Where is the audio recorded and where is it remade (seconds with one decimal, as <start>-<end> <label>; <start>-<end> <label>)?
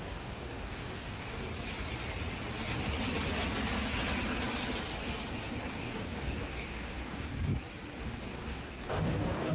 0.0-1.5 remade; 1.5-5.7 recorded; 5.7-7.5 remade; 7.5-8.0 recorded; 8.0-9.5 remade